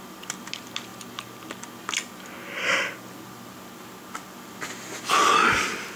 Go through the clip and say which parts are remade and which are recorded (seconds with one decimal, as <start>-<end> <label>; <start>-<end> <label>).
0.0-6.0 recorded